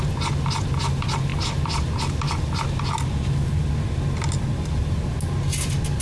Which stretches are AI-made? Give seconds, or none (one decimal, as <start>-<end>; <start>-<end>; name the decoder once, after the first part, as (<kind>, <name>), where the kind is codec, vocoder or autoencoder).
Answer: none